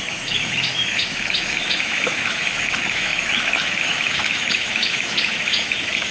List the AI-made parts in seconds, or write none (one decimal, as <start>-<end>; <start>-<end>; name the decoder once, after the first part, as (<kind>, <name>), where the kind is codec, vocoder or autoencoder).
0.0-6.1 (autoencoder, DAC-VAE)